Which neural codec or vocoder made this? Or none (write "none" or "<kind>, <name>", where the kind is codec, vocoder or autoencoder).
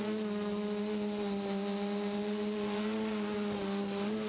none